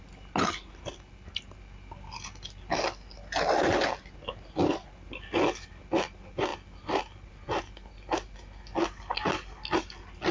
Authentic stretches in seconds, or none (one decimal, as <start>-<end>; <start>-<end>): 0.0-10.3